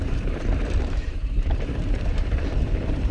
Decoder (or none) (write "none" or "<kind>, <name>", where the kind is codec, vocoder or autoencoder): vocoder, BigVGAN v2